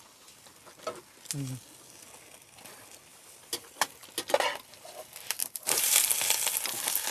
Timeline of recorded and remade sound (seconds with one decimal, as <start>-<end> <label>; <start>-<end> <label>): 0.0-3.1 recorded; 3.1-4.0 remade; 4.0-5.4 recorded; 5.4-6.0 remade; 6.0-7.1 recorded